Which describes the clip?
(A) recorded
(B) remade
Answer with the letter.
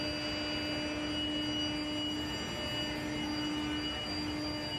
A